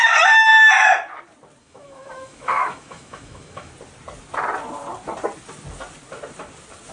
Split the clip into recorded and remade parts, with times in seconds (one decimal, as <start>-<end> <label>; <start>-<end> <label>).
0.0-1.6 recorded; 1.6-3.7 remade; 3.7-6.9 recorded